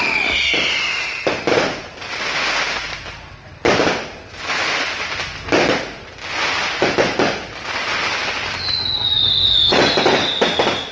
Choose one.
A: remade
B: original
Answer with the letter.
B